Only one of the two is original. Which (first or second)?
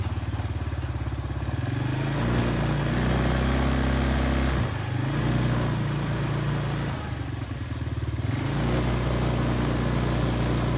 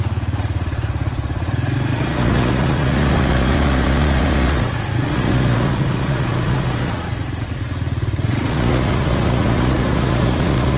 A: first